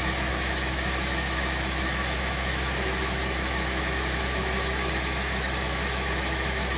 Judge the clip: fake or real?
fake